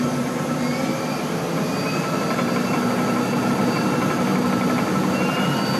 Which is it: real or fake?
real